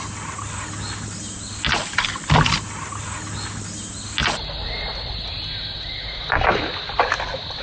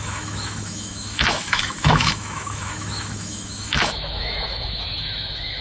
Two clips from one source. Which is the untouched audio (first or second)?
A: first